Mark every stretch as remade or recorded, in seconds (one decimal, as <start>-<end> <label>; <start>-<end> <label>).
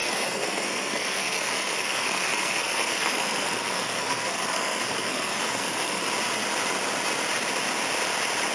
0.0-6.0 remade; 6.0-8.5 recorded